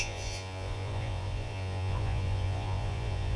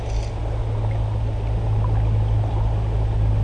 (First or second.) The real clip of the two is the second